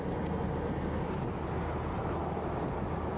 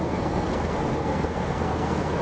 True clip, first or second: first